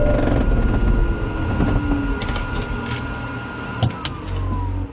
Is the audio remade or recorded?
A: recorded